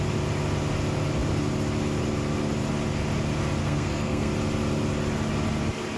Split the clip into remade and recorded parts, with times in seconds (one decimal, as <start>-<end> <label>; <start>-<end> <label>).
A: 0.0-3.6 recorded; 3.6-4.3 remade; 4.3-6.0 recorded